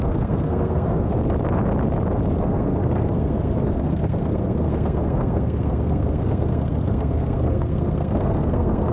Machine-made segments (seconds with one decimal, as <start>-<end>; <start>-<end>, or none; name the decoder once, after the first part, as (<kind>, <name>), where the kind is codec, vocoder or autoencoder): 0.0-1.1 (codec, SNAC); 2.4-8.9